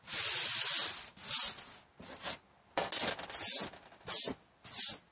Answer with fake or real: real